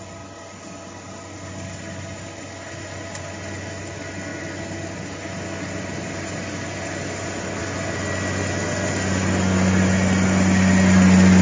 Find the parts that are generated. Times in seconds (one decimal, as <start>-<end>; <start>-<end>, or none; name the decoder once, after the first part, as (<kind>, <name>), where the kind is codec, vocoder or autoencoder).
none